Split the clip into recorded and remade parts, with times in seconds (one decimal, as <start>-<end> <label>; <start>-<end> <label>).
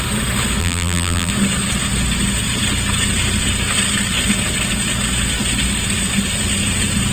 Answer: 0.0-0.6 recorded; 0.6-1.3 remade; 1.3-7.1 recorded